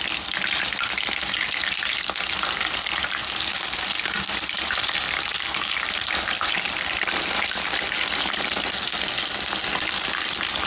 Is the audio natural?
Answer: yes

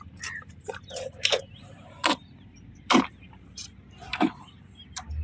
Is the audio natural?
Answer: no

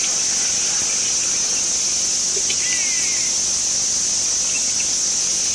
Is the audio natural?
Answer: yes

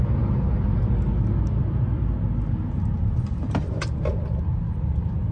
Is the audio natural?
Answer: yes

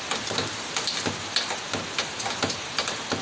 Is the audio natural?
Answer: yes